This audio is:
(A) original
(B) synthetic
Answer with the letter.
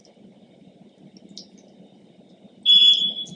A